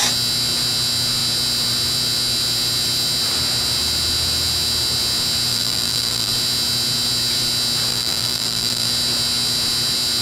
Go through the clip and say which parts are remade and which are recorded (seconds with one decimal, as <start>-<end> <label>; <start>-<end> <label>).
0.0-5.5 recorded; 5.5-6.3 remade; 6.3-7.9 recorded; 7.9-8.9 remade; 8.9-10.2 recorded